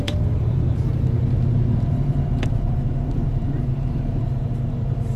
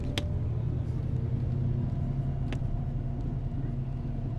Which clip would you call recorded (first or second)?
second